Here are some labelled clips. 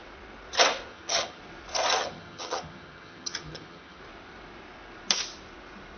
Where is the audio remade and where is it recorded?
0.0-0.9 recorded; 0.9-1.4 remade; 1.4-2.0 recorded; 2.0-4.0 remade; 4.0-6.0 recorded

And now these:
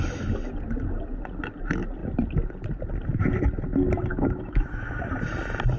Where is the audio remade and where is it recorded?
0.0-4.1 recorded; 4.1-5.1 remade; 5.1-5.8 recorded

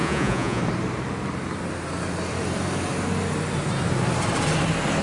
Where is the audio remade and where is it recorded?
0.0-0.6 remade; 0.6-5.0 recorded

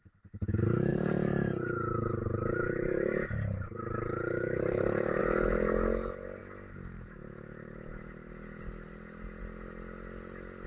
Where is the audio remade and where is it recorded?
0.0-0.9 recorded; 0.9-5.2 remade; 5.2-10.7 recorded